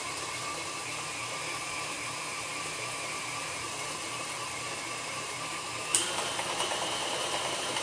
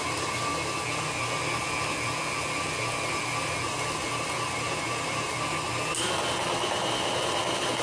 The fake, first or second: first